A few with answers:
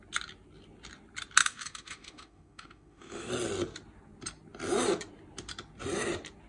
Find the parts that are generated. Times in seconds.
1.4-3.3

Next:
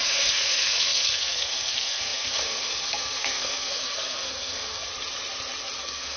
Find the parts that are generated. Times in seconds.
0.0-4.9; 5.8-6.2

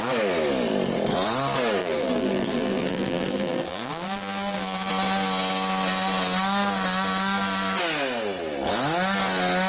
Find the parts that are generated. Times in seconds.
1.8-4.9

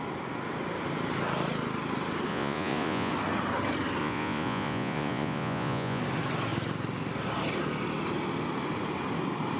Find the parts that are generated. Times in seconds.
2.3-3.1; 4.0-6.0